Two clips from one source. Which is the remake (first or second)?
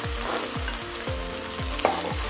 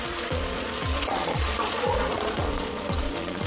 second